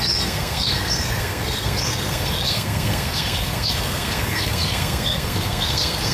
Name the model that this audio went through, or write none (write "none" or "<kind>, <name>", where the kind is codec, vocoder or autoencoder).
codec, SNAC